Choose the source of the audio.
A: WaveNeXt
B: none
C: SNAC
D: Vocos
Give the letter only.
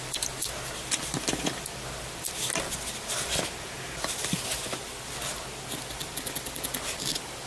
B